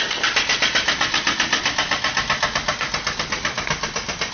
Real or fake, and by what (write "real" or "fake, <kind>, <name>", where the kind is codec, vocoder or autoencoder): real